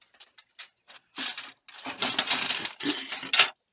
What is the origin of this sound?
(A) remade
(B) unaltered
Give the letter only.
B